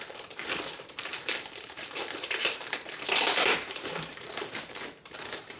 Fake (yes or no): yes